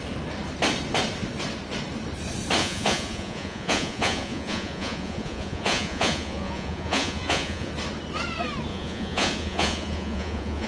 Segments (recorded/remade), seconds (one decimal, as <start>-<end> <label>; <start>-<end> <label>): 0.0-2.6 recorded; 2.6-7.7 remade; 7.7-8.7 recorded; 8.7-10.7 remade

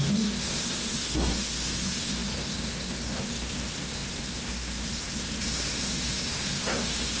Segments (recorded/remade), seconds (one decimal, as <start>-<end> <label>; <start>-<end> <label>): 0.0-7.2 remade

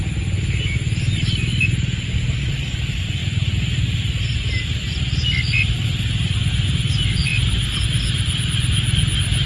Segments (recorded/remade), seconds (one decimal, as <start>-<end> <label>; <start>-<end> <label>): 0.0-9.5 recorded

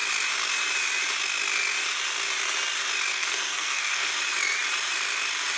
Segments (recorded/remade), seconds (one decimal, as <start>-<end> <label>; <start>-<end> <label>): 0.0-3.1 recorded; 3.1-4.1 remade; 4.1-5.6 recorded

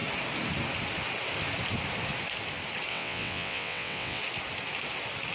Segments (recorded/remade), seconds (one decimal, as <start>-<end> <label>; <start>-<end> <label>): 0.0-2.9 recorded; 2.9-4.2 remade; 4.2-5.3 recorded

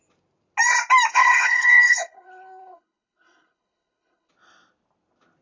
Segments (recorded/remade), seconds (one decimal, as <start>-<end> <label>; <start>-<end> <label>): 0.0-1.1 recorded; 1.1-4.3 remade; 4.3-5.4 recorded

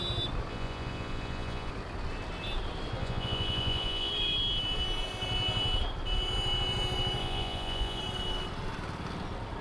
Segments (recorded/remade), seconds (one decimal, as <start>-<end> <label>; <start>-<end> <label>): 0.0-0.5 recorded; 0.5-1.7 remade; 1.7-3.0 recorded; 3.0-4.1 remade; 4.1-7.2 recorded; 7.2-8.0 remade; 8.0-9.6 recorded

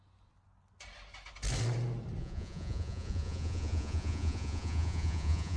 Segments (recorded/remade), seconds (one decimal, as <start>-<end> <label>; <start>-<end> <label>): 0.0-2.2 recorded; 2.2-5.6 remade